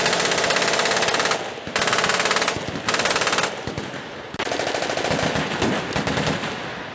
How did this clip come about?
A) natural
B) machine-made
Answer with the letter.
A